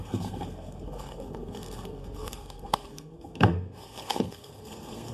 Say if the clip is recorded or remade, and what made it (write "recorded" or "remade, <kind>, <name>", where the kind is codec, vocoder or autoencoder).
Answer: remade, codec, SNAC